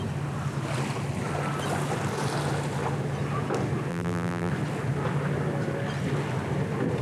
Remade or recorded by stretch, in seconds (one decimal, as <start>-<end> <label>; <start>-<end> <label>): 0.0-3.9 recorded; 3.9-4.5 remade; 4.5-7.0 recorded